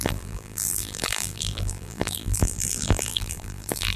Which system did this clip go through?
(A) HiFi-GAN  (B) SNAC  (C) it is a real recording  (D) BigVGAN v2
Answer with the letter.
D